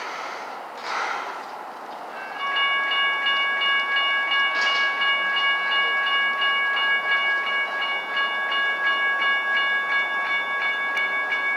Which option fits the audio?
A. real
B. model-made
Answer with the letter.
A